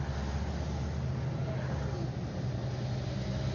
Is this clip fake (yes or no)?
no